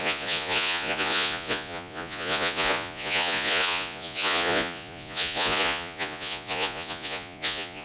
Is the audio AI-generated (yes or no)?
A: yes